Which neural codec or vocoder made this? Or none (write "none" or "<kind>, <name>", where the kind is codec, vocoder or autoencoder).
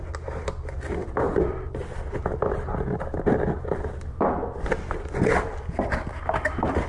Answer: none